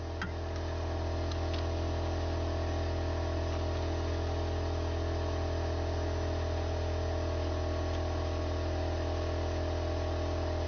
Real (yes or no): yes